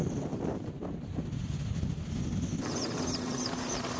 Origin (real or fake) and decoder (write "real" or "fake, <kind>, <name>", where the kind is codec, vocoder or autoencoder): real